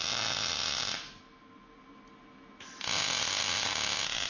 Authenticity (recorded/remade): recorded